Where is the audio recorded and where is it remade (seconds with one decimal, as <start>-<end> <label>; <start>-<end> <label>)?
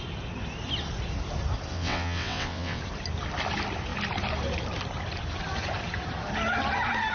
0.0-1.7 recorded; 1.7-2.8 remade; 2.8-7.1 recorded